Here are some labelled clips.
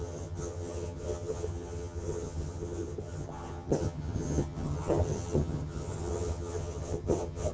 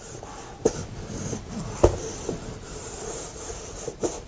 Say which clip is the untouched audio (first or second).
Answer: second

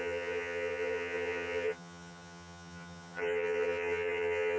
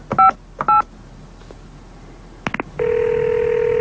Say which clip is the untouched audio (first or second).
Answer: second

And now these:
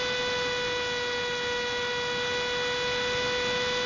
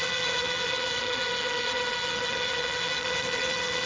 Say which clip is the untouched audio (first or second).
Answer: first